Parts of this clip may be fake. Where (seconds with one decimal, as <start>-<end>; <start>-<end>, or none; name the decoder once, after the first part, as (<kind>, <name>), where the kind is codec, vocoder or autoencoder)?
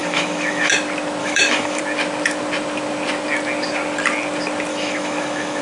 0.0-0.7 (autoencoder, DAC-VAE); 1.2-1.8; 4.7-5.6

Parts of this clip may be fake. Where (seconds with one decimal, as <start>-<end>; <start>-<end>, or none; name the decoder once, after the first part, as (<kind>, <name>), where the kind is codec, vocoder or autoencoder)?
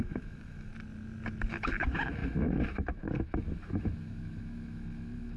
0.0-0.7 (autoencoder, DAC-VAE); 1.5-5.4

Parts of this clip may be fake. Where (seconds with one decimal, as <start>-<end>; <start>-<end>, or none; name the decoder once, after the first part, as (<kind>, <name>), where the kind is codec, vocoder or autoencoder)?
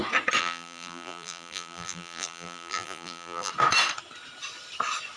0.4-3.5 (vocoder, BigVGAN v2)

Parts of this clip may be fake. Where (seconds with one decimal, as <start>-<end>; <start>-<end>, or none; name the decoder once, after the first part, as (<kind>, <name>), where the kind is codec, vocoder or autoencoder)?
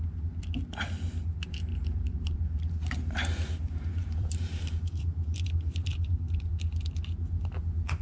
1.7-6.5 (vocoder, BigVGAN v2)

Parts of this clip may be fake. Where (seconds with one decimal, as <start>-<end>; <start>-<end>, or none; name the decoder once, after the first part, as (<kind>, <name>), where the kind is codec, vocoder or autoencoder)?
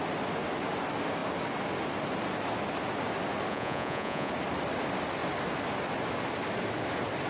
3.5-4.3 (vocoder, Vocos)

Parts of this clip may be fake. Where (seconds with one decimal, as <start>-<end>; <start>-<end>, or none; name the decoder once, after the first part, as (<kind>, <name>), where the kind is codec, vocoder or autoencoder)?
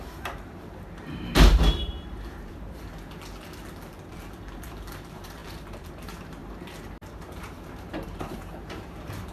0.0-2.9 (vocoder, BigVGAN v2); 4.1-6.4; 7.1-9.3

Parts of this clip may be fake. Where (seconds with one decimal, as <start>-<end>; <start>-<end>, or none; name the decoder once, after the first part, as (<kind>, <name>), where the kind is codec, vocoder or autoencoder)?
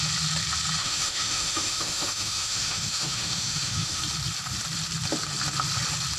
0.8-4.0 (autoencoder, DAC-VAE)